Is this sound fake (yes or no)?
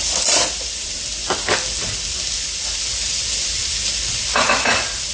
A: no